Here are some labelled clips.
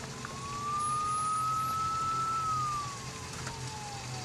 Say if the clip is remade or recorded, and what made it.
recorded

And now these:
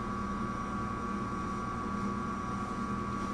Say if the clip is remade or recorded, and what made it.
recorded